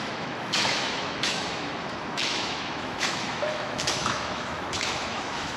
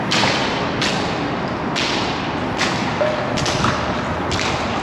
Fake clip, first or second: first